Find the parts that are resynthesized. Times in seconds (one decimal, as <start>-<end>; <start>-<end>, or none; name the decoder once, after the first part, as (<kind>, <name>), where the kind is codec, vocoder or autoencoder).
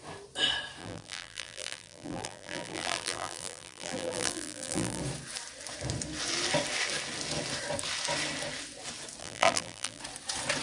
0.8-5.0 (vocoder, BigVGAN v2); 9.2-10.0